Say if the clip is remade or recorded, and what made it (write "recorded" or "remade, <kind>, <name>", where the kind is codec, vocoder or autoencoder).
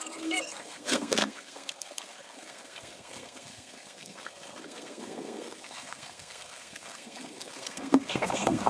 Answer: remade, codec, SNAC